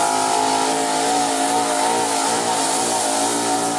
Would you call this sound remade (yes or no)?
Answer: no